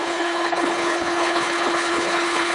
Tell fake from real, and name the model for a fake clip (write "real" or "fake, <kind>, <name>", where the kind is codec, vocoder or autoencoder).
fake, codec, HILCodec